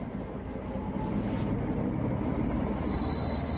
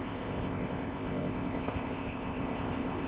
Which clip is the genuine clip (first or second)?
first